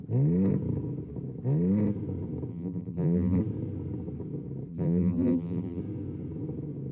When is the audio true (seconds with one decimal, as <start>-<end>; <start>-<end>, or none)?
0.0-2.5; 3.4-4.7; 5.8-6.9